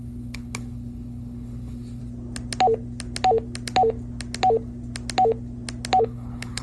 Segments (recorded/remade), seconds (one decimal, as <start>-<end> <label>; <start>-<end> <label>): 0.0-2.0 remade; 2.0-6.0 recorded; 6.0-6.6 remade